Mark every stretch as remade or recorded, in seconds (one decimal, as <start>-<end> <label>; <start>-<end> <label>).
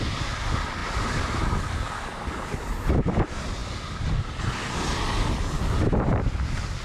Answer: 0.0-6.8 recorded